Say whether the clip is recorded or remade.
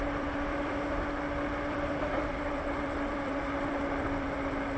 remade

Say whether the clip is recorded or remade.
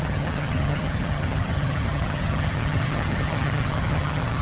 remade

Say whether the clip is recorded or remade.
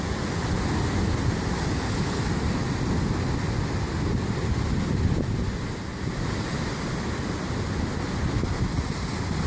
recorded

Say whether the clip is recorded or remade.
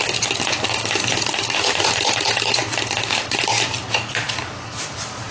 recorded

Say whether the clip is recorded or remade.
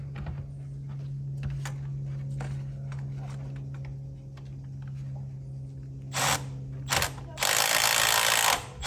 recorded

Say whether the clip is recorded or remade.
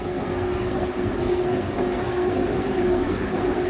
remade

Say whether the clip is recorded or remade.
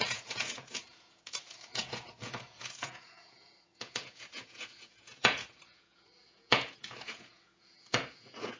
remade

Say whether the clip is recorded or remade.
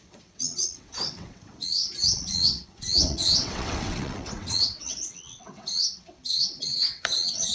remade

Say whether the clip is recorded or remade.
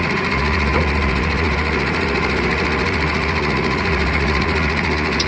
remade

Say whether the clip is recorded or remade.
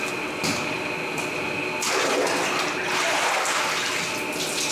recorded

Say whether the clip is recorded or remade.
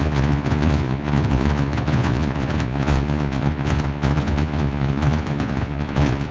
remade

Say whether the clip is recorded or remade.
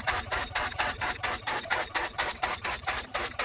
remade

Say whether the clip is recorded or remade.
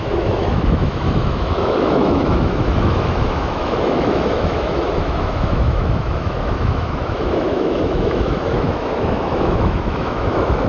remade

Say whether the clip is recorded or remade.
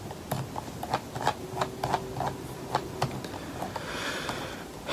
recorded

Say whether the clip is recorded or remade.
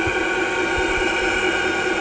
recorded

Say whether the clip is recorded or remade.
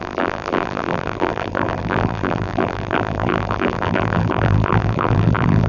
remade